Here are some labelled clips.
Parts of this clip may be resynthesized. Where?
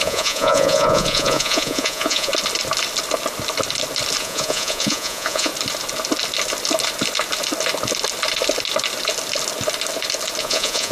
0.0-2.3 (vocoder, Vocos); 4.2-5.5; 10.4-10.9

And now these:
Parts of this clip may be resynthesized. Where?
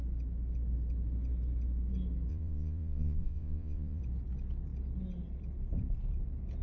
2.3-4.0 (vocoder, Vocos)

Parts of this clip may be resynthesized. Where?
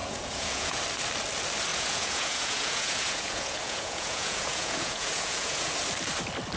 0.0-0.8 (vocoder, Vocos); 1.7-5.7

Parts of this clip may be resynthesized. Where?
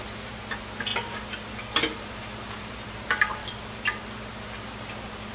none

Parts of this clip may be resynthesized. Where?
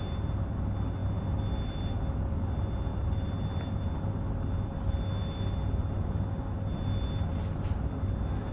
none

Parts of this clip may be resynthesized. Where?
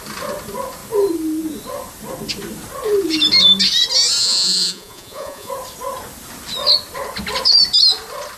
4.2-5.5 (vocoder, Vocos)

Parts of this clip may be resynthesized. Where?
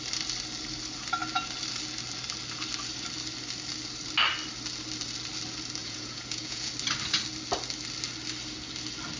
5.8-6.7 (vocoder, Vocos)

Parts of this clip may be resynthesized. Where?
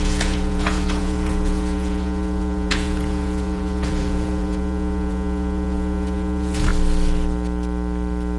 0.0-6.7 (vocoder, Vocos)